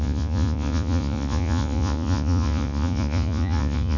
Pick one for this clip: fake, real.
fake